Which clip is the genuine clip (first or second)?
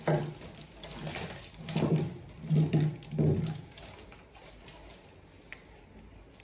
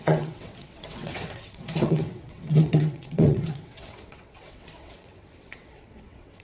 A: first